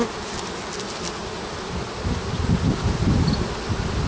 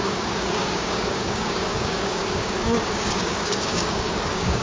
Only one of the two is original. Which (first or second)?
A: first